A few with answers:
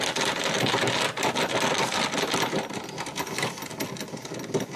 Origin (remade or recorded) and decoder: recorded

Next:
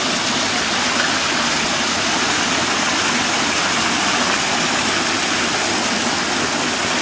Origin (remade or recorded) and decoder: recorded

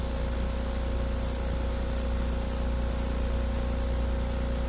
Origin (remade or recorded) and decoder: recorded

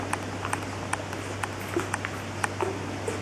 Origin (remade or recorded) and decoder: recorded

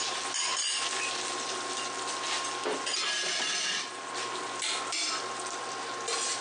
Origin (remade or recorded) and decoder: recorded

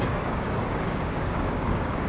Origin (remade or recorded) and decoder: remade, codec, DAC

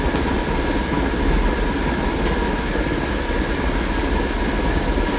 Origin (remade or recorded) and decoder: recorded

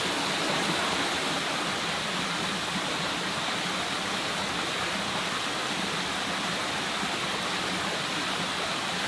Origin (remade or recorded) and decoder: recorded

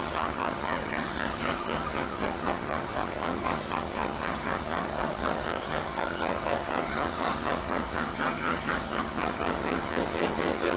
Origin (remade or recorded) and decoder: remade, vocoder, HiFi-GAN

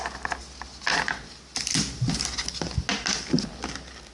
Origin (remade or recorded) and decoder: recorded